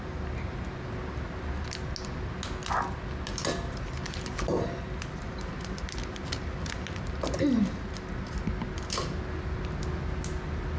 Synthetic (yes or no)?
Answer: no